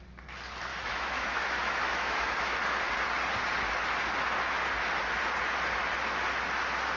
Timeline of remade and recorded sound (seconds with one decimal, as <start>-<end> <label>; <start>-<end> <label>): 0.0-0.7 recorded; 0.7-2.5 remade; 2.5-7.0 recorded